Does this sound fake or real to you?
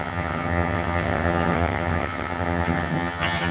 fake